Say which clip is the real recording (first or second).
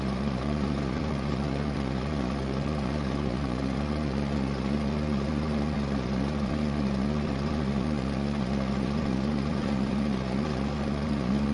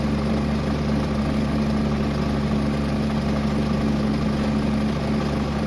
second